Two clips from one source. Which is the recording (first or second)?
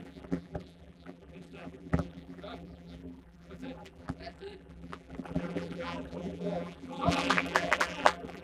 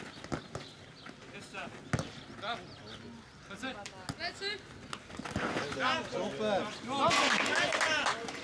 second